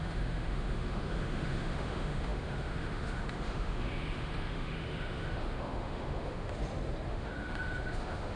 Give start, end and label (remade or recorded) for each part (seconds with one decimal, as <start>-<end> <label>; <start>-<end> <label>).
0.0-6.6 remade; 6.6-7.1 recorded; 7.1-8.4 remade